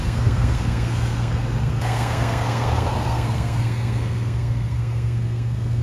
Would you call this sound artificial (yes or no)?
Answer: yes